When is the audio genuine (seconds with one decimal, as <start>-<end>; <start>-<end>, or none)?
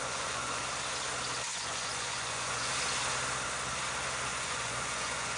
0.6-1.5; 2.7-4.3